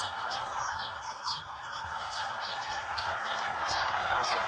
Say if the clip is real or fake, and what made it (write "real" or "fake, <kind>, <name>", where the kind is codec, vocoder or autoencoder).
fake, codec, SNAC